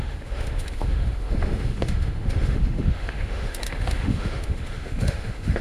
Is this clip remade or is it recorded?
remade